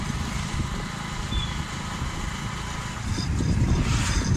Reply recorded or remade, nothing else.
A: recorded